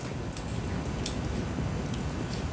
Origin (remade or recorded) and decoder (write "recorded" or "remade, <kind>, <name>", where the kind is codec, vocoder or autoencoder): recorded